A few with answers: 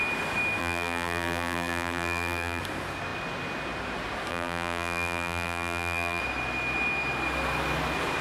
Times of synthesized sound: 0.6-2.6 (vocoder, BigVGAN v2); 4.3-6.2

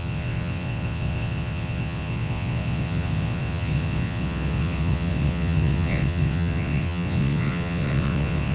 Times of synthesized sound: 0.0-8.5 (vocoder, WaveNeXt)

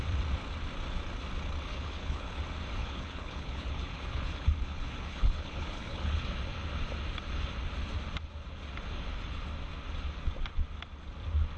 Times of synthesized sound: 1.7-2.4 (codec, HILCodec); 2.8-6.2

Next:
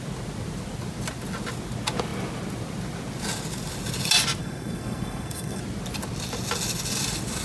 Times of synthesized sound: 4.4-5.6 (codec, SNAC)

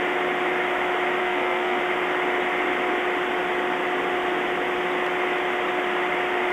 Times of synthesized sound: 1.2-1.8 (codec, SNAC)